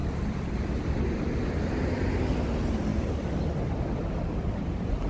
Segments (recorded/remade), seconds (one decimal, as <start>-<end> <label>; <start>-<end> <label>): 0.0-5.1 recorded